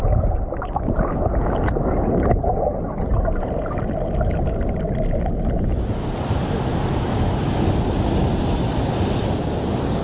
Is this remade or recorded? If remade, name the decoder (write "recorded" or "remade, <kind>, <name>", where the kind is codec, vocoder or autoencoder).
recorded